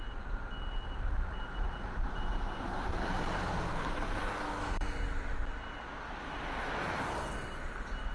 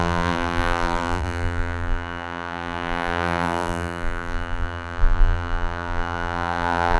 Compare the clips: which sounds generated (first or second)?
second